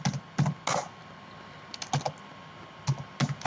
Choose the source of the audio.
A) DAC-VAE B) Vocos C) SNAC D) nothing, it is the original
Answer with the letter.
D